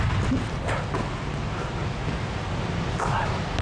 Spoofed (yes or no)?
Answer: no